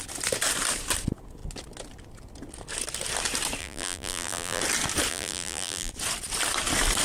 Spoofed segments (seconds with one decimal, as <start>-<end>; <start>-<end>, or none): 3.6-4.6; 5.1-5.9